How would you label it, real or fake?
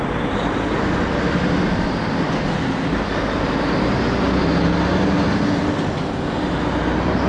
real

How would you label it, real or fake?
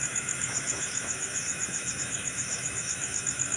fake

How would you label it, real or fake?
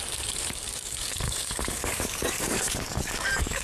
fake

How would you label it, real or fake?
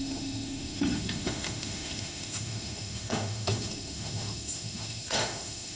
fake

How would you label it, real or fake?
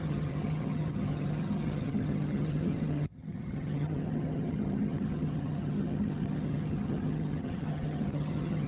fake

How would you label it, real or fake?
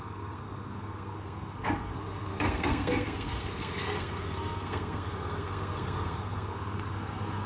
fake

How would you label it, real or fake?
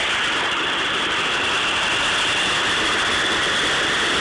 fake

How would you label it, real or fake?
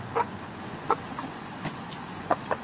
fake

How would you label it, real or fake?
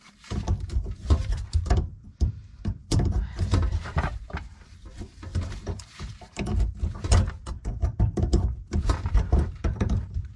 fake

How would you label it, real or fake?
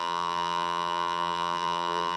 fake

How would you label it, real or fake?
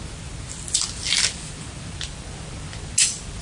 real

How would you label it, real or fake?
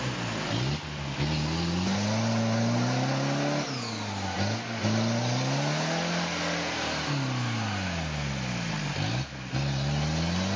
real